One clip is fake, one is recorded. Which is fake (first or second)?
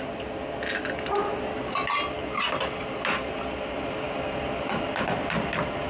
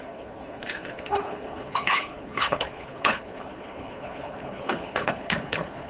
second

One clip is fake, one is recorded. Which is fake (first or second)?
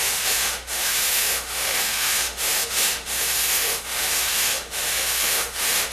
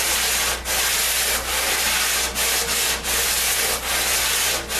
first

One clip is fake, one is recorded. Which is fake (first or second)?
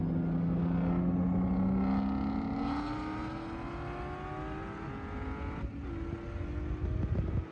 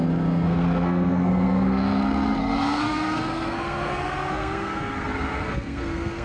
second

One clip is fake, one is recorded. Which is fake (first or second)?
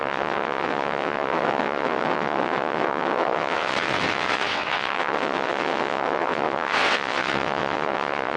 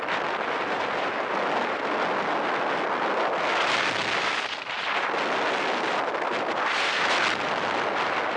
first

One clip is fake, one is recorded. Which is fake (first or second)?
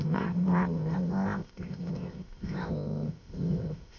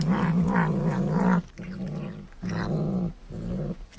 first